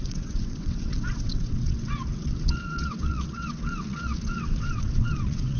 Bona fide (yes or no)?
no